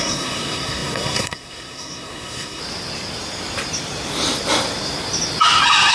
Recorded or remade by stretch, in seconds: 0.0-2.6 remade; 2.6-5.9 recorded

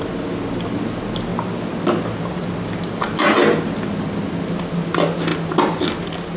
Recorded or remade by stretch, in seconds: 0.0-6.4 recorded

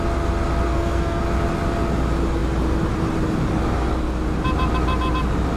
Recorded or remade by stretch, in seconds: 0.0-0.7 recorded; 0.7-1.2 remade; 1.2-5.6 recorded